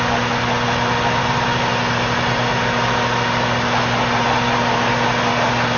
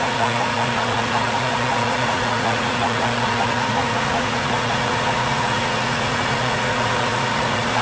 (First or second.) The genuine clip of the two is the first